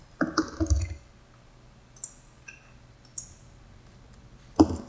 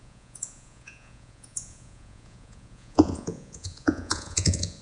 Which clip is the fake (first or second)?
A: second